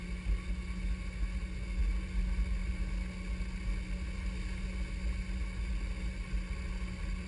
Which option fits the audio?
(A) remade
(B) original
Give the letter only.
B